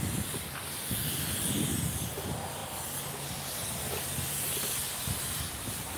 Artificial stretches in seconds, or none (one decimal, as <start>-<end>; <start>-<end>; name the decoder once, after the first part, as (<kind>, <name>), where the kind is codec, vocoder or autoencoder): 0.0-2.6 (vocoder, BigVGAN v2); 3.9-6.0

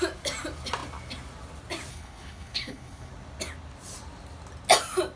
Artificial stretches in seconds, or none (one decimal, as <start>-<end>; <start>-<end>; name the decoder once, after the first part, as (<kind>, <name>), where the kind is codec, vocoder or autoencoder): 1.9-3.1 (codec, HILCodec)

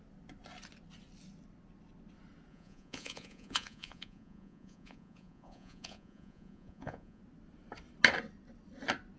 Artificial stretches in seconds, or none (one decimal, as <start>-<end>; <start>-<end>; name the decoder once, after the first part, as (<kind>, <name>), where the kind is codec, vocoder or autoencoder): 2.5-7.2 (vocoder, Vocos)

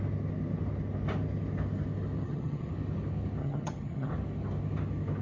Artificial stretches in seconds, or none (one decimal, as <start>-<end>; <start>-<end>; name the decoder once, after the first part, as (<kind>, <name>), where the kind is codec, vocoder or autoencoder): 2.2-2.7 (vocoder, HiFi-GAN); 3.4-4.1

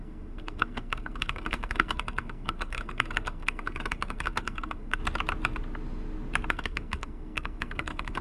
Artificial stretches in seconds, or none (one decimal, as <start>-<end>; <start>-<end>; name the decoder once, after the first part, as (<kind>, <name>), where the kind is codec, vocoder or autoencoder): 0.0-5.0 (codec, SNAC); 6.5-8.2

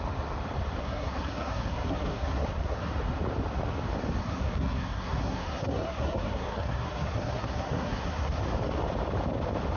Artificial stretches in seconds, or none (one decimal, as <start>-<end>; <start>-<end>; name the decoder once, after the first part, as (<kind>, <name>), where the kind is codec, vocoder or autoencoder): 0.8-2.9 (codec, SNAC); 4.2-8.4

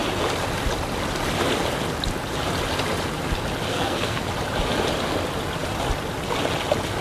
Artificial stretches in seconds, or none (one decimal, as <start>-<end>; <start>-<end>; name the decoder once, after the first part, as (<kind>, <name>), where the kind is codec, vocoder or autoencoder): 3.7-4.3 (codec, SNAC)

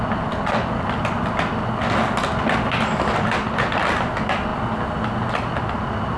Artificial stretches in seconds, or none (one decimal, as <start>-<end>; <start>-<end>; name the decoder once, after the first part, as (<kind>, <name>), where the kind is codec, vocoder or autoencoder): none